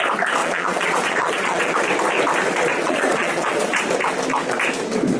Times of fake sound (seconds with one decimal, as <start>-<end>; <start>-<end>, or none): 0.4-1.8; 2.7-3.8